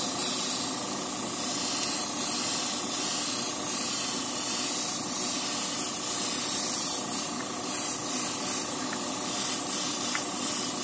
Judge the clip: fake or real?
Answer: real